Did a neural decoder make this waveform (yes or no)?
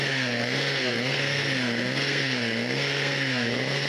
yes